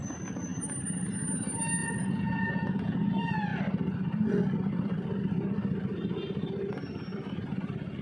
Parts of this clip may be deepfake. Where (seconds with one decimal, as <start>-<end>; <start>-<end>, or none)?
1.8-3.1